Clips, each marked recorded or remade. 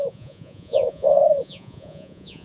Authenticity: remade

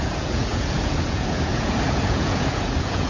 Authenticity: remade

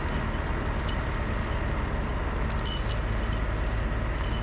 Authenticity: recorded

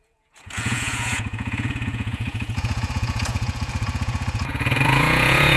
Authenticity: remade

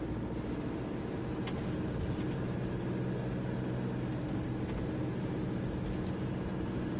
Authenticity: recorded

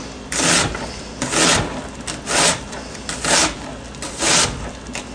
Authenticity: recorded